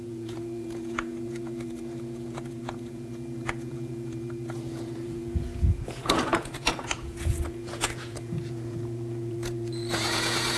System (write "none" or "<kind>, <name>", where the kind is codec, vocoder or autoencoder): vocoder, Vocos